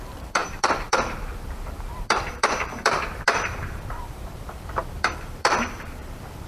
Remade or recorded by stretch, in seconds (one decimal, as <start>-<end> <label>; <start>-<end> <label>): 0.0-6.5 remade